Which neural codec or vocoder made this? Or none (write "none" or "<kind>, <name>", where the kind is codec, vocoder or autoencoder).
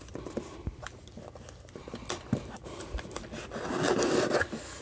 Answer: none